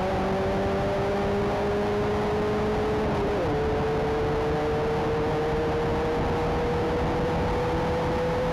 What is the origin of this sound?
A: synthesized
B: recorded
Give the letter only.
B